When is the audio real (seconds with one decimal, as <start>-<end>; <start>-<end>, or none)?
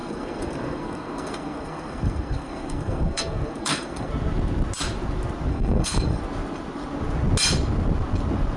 4.1-5.5; 6.2-8.6